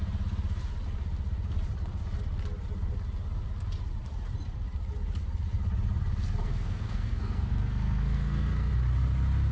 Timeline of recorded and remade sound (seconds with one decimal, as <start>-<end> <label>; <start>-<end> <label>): 0.0-6.4 recorded; 6.4-8.7 remade; 8.7-9.5 recorded